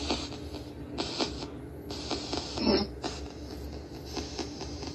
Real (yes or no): yes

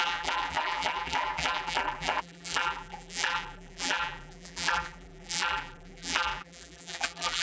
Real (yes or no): no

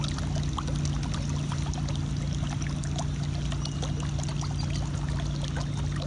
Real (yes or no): yes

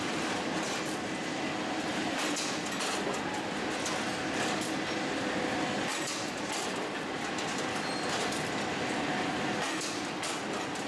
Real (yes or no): yes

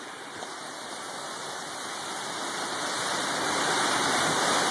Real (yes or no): no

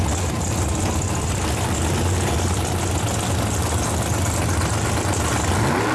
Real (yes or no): yes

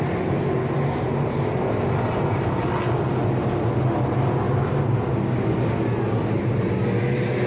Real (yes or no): yes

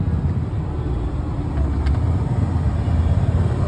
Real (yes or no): yes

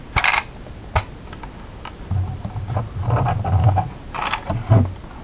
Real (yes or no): yes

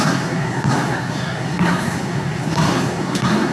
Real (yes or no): no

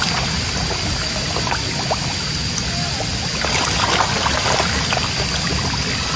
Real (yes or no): yes